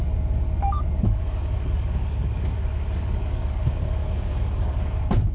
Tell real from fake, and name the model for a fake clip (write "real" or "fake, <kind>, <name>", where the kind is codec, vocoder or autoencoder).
fake, codec, DAC